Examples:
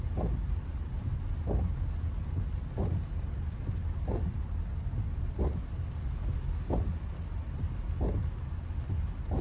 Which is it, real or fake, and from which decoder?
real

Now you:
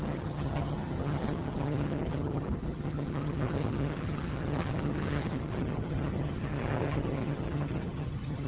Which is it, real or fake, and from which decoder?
fake, vocoder, HiFi-GAN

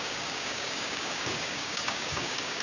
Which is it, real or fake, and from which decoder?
fake, codec, DAC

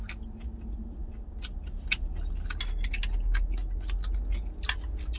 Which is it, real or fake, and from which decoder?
real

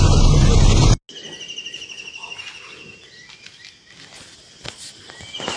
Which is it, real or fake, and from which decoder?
real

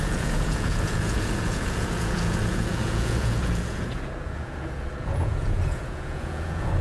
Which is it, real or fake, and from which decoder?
fake, vocoder, Vocos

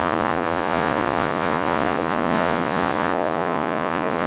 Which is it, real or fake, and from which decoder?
fake, vocoder, Vocos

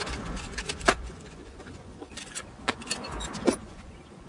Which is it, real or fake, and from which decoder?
fake, vocoder, Vocos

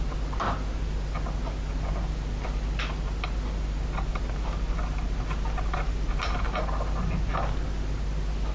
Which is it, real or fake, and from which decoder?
real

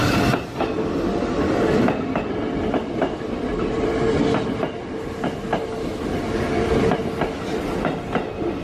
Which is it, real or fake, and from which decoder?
real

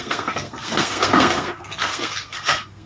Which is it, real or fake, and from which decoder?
fake, codec, SNAC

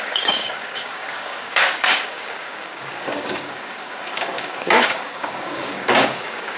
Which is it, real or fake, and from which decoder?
fake, codec, DAC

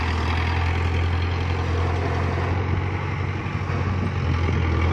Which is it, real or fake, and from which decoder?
real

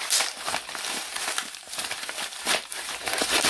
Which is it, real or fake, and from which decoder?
fake, vocoder, BigVGAN v2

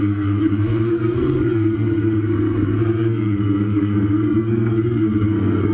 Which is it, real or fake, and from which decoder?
fake, codec, SNAC